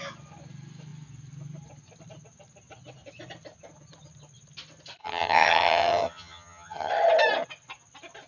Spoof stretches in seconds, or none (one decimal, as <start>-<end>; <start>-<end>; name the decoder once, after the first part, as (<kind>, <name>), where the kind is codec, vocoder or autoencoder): 5.0-6.9 (vocoder, HiFi-GAN)

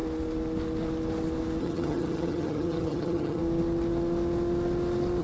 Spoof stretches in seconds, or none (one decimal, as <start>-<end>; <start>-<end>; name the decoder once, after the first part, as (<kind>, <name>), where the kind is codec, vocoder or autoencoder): 1.6-3.4 (vocoder, HiFi-GAN)

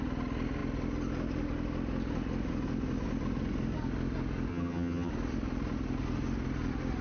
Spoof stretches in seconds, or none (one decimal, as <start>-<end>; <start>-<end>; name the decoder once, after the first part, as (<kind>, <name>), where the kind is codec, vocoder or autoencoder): 4.5-5.1 (vocoder, HiFi-GAN)

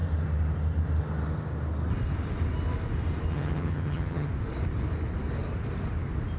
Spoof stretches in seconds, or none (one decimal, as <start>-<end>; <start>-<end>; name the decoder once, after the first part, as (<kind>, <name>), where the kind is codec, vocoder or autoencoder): 3.3-4.3 (vocoder, HiFi-GAN)

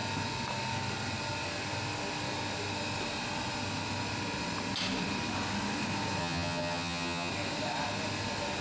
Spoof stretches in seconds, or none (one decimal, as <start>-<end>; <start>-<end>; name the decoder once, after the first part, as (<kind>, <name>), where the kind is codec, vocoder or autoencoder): 6.2-7.3 (vocoder, HiFi-GAN)

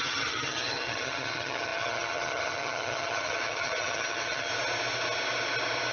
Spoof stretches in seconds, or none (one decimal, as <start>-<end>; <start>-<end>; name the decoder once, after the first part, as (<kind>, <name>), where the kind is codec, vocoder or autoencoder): 0.0-4.5 (vocoder, HiFi-GAN)

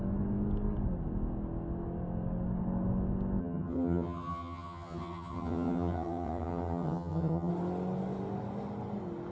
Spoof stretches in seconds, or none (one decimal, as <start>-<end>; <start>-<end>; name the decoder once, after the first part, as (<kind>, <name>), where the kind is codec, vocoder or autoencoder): 3.4-7.5 (vocoder, HiFi-GAN)

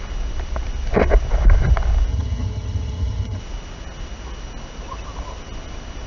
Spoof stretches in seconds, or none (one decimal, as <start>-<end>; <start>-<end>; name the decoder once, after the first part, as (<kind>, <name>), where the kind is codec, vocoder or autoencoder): 2.1-3.4 (vocoder, HiFi-GAN)